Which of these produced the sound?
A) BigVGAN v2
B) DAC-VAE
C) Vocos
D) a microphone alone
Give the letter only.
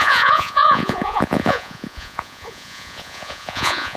C